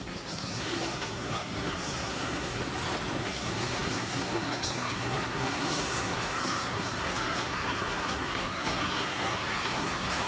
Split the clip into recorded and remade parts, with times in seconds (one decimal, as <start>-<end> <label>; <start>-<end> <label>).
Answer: 0.0-2.6 remade; 2.6-3.2 recorded; 3.2-10.3 remade